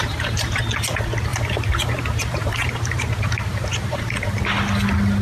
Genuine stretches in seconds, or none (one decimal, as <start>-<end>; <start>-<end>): 0.6-1.3; 4.4-5.2